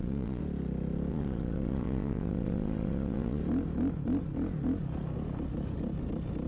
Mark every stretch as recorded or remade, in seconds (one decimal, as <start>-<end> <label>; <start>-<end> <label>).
0.0-0.4 remade; 0.4-1.1 recorded; 1.1-3.4 remade; 3.4-6.5 recorded